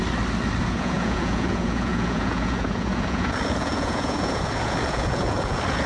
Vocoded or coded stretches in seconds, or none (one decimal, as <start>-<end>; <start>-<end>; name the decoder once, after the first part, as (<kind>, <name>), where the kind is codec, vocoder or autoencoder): 0.6-5.9 (vocoder, Vocos)